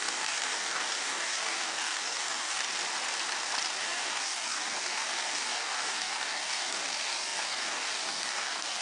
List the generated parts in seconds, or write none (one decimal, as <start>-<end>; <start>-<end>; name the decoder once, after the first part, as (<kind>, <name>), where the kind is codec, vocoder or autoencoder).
0.0-2.6 (codec, DAC); 3.8-8.8